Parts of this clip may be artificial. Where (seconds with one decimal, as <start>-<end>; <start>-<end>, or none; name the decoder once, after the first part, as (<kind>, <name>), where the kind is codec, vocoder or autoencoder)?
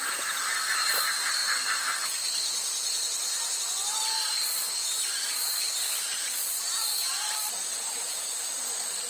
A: 0.0-1.4 (vocoder, BigVGAN v2); 5.1-6.5; 7.1-9.1